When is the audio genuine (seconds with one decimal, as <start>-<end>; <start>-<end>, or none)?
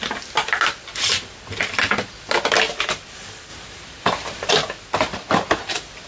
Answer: 0.0-3.5; 4.5-6.1